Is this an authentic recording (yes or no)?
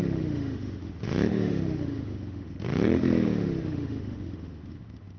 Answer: no